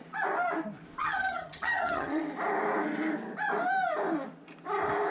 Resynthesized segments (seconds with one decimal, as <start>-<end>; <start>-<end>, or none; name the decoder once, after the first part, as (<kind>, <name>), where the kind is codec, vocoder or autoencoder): 1.0-2.2 (vocoder, HiFi-GAN)